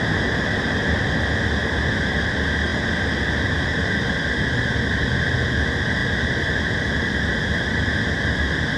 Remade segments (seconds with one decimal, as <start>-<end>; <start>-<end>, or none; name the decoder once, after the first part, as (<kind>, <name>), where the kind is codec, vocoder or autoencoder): 6.0-8.8 (vocoder, BigVGAN v2)